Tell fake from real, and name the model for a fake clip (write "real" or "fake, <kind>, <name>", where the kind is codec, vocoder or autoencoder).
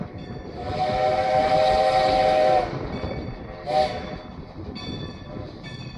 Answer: real